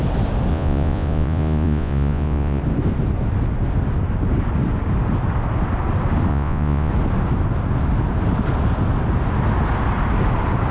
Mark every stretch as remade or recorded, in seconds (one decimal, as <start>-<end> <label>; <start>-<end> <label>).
0.0-0.5 recorded; 0.5-2.6 remade; 2.6-6.3 recorded; 6.3-6.9 remade; 6.9-10.7 recorded